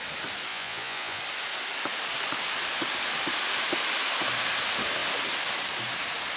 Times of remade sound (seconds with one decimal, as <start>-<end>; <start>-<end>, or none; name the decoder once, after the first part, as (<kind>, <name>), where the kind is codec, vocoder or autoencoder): 0.5-1.2 (vocoder, Vocos)